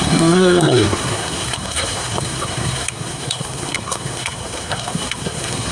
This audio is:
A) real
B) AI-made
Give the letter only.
B